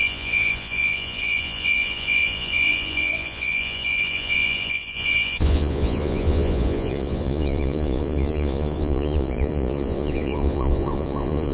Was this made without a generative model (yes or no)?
no